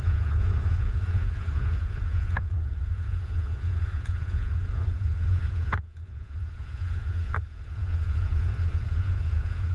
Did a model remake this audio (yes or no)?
yes